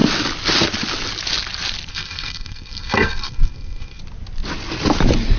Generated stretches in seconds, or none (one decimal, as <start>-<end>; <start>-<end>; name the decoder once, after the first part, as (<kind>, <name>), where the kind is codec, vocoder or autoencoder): 1.9-4.0 (codec, SNAC)